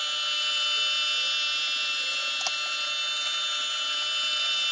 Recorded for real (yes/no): yes